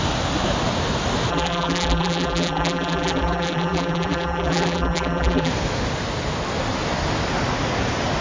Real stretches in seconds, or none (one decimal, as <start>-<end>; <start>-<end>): 0.0-1.3; 5.5-8.2